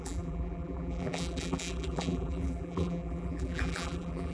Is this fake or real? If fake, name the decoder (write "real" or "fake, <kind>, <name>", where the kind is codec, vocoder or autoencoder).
fake, vocoder, BigVGAN v2